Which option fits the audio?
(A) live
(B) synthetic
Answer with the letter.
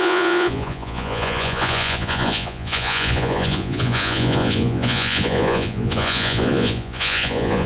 B